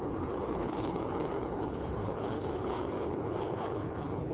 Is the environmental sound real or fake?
fake